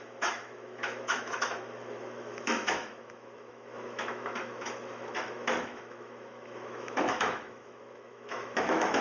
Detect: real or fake fake